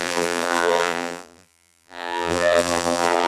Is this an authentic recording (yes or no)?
no